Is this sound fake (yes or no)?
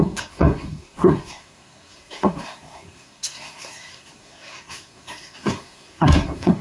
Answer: yes